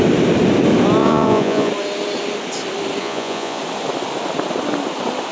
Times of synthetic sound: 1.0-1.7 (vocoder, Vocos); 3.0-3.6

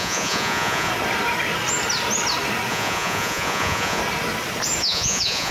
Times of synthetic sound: 0.0-0.9 (vocoder, Vocos); 2.7-4.0; 4.8-5.5

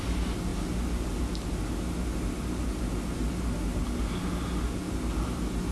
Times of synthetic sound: none

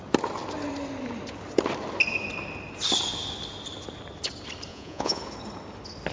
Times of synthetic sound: 4.7-5.2 (vocoder, Vocos)

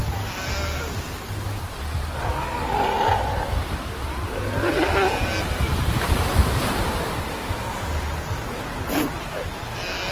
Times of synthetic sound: none

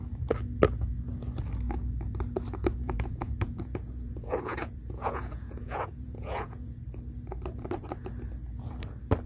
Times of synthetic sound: 2.6-6.8 (vocoder, Vocos)

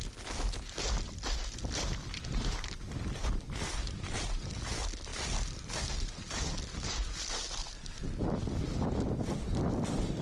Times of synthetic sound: none